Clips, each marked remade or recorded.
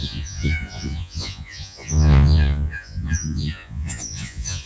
remade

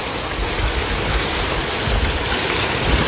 recorded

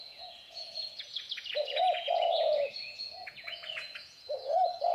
remade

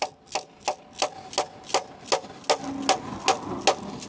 recorded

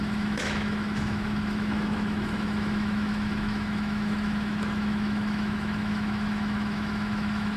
remade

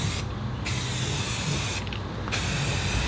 recorded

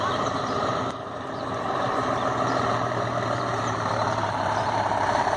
remade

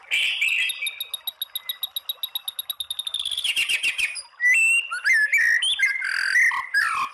recorded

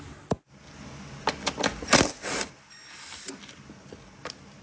recorded